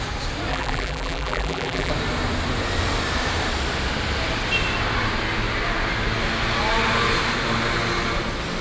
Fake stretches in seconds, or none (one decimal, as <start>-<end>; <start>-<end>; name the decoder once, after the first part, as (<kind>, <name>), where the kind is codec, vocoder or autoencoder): 0.5-1.9 (vocoder, BigVGAN v2)